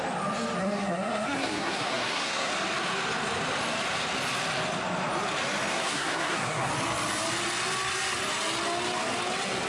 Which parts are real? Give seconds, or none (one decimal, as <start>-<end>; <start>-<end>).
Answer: 0.0-0.6; 2.5-5.7; 6.7-9.7